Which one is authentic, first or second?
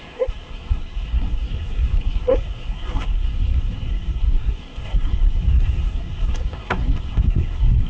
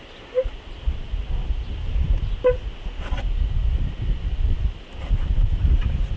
second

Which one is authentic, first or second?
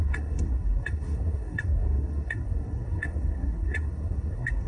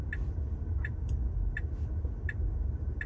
second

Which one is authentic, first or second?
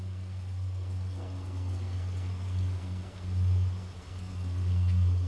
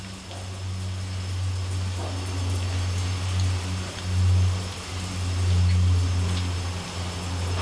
second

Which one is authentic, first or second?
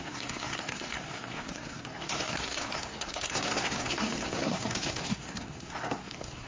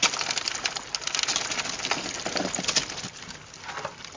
second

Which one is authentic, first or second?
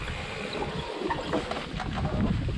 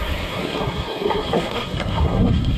first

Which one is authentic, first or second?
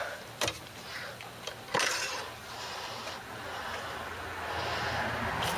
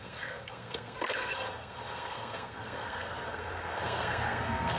first